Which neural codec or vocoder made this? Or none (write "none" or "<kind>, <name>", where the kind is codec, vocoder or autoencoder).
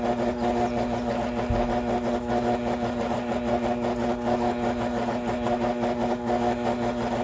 none